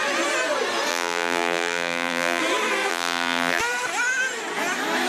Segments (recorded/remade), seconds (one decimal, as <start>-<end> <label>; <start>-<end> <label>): 0.0-0.9 recorded; 0.9-2.4 remade; 2.4-2.9 recorded; 2.9-3.6 remade; 3.6-5.1 recorded

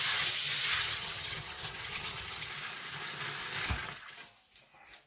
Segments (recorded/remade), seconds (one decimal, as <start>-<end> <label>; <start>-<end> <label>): 0.0-0.7 recorded; 0.7-2.5 remade; 2.5-5.1 recorded

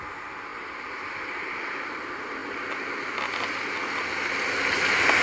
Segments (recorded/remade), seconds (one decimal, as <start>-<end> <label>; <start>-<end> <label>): 0.0-0.5 recorded; 0.5-1.6 remade; 1.6-5.2 recorded

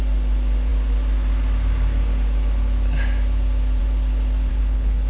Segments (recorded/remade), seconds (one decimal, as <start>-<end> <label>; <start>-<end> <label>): 0.0-4.5 recorded; 4.5-5.1 remade

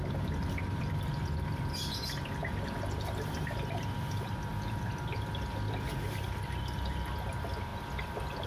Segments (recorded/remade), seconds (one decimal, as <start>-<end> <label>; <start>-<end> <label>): 0.0-2.4 remade; 2.4-3.4 recorded; 3.4-8.5 remade

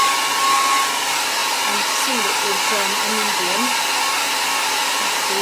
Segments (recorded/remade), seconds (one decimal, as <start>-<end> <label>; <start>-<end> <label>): 0.0-5.4 recorded

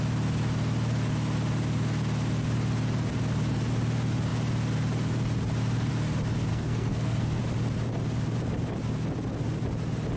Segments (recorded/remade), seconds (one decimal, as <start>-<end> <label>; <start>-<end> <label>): 0.0-6.5 recorded; 6.5-7.4 remade; 7.4-10.2 recorded